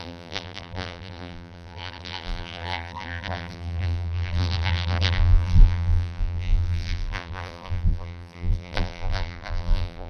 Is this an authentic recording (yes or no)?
no